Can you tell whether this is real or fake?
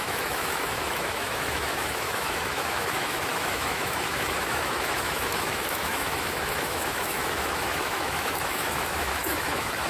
fake